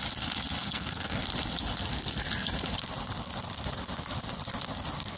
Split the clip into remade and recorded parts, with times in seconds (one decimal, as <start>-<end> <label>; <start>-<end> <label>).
0.0-0.6 recorded; 0.6-1.2 remade; 1.2-5.2 recorded